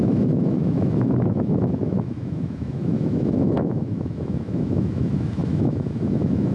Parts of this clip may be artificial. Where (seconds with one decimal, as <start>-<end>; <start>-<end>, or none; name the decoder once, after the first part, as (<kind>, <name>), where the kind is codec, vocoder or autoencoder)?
0.0-6.5 (autoencoder, DAC-VAE)